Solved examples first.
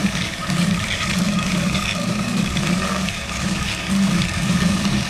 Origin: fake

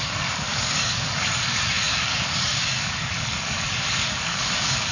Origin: fake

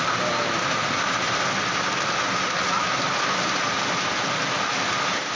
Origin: real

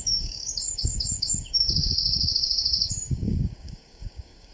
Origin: fake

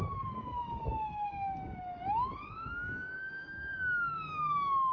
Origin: fake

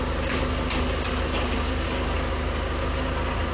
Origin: real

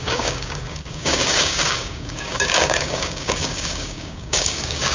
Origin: fake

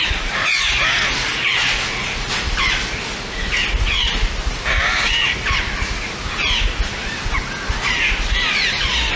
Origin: real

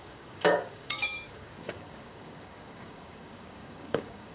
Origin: fake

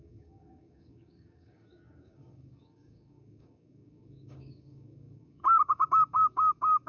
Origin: fake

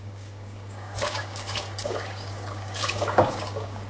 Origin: fake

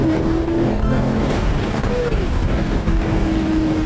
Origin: fake